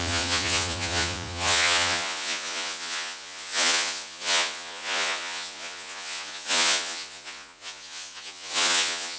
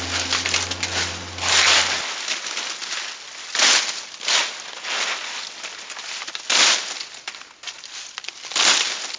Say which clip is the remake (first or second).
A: first